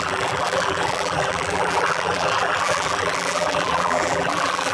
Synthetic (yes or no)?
yes